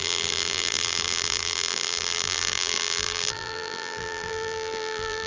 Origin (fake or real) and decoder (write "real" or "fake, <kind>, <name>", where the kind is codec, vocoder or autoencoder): fake, vocoder, BigVGAN v2